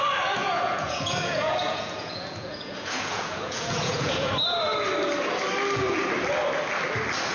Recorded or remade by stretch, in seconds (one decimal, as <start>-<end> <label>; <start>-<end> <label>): 0.0-0.4 recorded; 0.4-4.3 remade; 4.3-7.3 recorded